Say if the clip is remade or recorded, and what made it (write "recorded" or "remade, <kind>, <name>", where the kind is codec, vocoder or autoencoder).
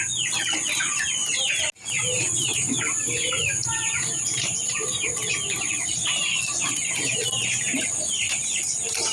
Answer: recorded